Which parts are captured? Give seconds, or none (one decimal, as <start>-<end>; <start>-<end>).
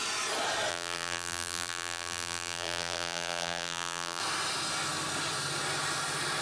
0.0-0.7; 4.2-6.4